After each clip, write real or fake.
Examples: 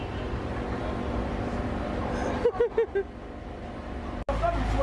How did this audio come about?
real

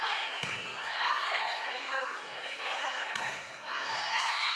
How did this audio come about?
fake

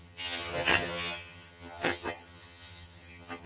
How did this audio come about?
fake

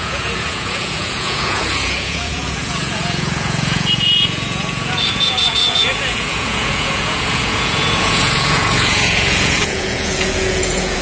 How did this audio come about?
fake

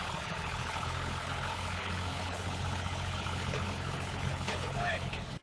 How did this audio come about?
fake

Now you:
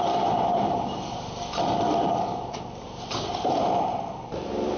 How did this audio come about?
fake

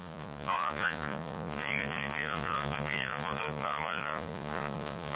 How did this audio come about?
fake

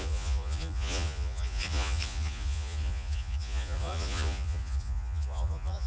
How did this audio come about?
fake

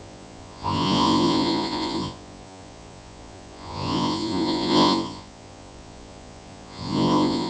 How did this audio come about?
fake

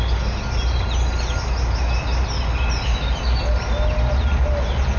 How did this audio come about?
real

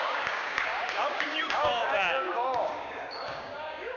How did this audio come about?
fake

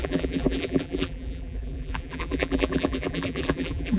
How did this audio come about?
fake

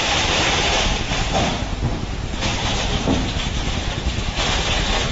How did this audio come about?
fake